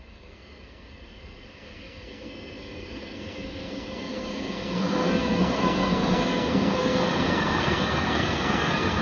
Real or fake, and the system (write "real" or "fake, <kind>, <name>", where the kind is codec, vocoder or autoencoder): fake, codec, SNAC